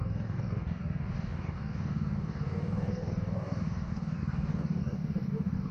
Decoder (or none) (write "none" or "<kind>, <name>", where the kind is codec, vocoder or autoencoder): codec, DAC